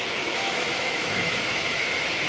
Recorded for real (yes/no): no